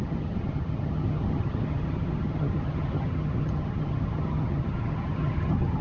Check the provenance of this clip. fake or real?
fake